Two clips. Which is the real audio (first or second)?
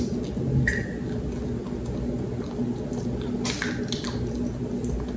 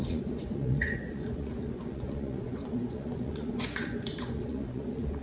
first